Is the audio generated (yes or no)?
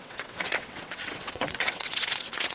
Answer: yes